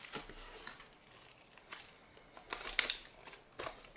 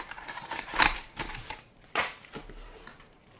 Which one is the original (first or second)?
first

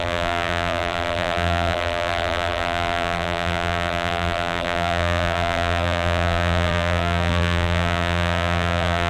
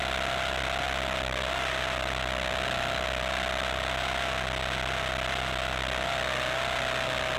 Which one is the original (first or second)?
second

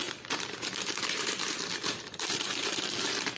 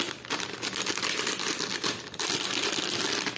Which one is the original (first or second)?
second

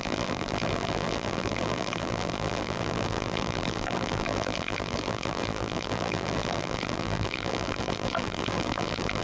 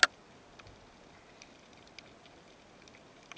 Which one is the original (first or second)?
second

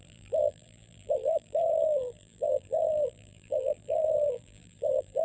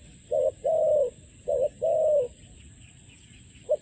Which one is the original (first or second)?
second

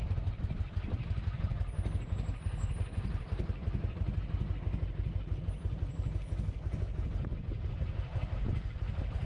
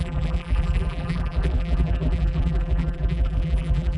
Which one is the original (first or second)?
first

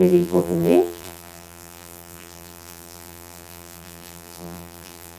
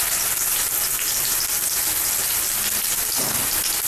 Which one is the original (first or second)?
second